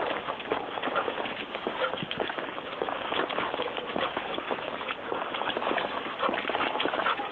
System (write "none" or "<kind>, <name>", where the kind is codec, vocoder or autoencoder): codec, DAC